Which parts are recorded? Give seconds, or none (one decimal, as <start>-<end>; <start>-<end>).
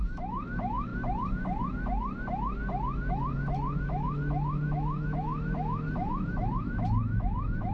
0.9-3.1